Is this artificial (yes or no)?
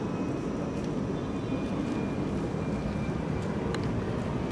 no